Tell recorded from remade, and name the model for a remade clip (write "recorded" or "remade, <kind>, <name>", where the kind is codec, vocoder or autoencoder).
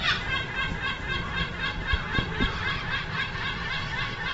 recorded